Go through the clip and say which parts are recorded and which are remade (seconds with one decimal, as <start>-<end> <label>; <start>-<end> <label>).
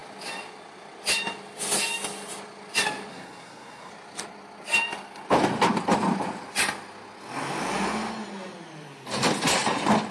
0.0-3.1 recorded; 3.1-3.9 remade; 3.9-10.1 recorded